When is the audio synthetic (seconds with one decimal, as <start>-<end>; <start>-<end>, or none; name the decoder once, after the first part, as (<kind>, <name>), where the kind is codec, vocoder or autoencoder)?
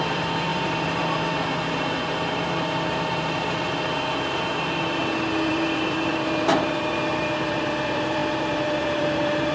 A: 0.0-5.0 (vocoder, BigVGAN v2); 5.5-9.5